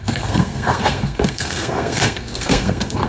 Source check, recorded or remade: remade